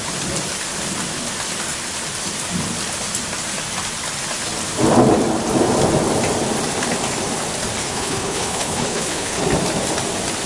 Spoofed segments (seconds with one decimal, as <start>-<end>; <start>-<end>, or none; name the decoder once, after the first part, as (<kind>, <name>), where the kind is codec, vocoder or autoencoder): 7.8-9.4 (codec, HILCodec)